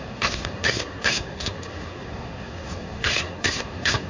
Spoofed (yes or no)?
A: yes